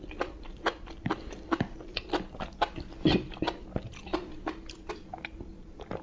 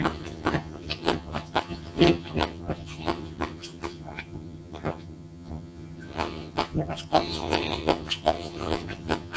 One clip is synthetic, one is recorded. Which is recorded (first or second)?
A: first